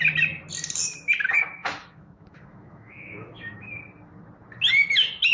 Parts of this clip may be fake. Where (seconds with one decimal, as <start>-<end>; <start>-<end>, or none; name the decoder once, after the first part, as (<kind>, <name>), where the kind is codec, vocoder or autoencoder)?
1.6-3.8 (autoencoder, DAC-VAE)